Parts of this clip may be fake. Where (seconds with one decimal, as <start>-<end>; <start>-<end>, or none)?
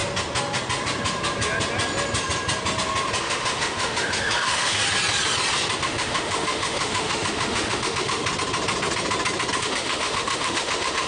3.2-4.8; 5.8-8.2; 9.6-11.1